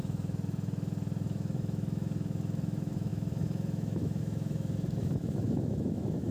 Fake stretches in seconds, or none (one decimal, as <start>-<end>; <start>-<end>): 0.0-6.3